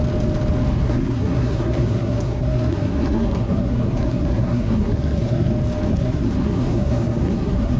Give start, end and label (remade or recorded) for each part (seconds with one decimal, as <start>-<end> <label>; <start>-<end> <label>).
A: 0.0-0.8 recorded; 0.8-5.5 remade; 5.5-5.9 recorded; 5.9-7.8 remade